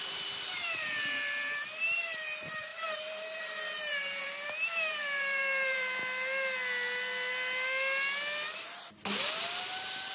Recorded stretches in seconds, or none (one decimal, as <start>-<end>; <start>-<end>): 6.0-9.6